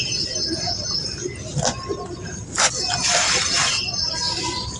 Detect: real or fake real